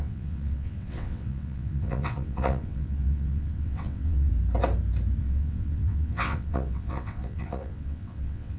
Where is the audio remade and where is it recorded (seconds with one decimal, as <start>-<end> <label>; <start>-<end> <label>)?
0.0-4.3 remade; 4.3-5.2 recorded; 5.2-8.6 remade